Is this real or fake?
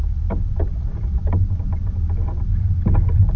real